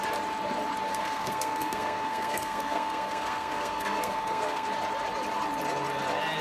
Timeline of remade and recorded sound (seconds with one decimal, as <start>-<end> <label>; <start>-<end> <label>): 0.0-0.9 recorded; 0.9-4.7 remade; 4.7-6.4 recorded